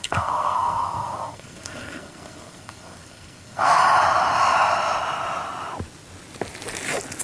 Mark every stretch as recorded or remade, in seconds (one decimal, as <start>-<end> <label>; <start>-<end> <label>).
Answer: 0.0-3.8 remade; 3.8-7.2 recorded